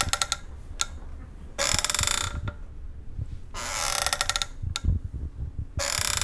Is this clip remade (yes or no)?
no